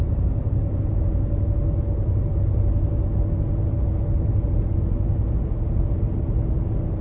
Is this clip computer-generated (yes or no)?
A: no